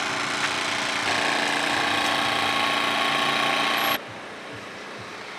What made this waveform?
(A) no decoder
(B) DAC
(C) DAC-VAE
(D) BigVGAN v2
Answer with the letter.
A